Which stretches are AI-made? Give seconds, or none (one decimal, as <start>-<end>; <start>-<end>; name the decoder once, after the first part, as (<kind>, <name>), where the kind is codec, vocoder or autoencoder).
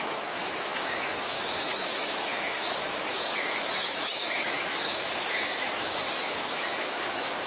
0.0-7.5 (autoencoder, DAC-VAE)